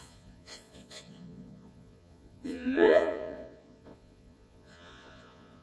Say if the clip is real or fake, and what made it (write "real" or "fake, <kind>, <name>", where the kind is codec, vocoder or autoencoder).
fake, vocoder, Vocos